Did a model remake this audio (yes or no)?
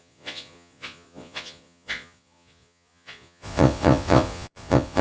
yes